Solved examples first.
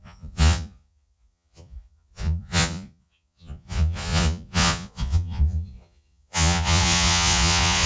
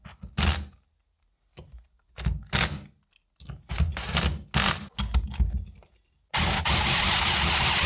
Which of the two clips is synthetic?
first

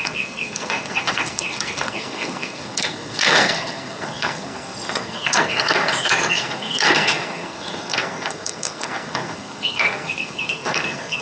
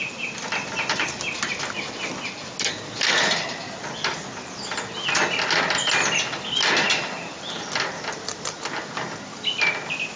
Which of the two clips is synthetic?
first